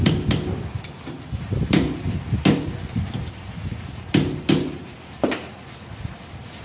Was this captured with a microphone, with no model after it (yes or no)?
yes